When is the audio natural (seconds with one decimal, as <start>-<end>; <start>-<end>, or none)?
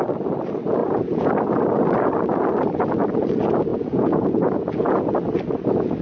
0.0-0.8; 1.3-3.7; 5.0-6.0